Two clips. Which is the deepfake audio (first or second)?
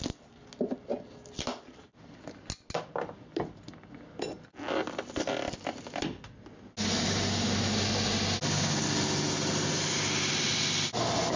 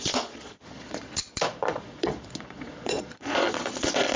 second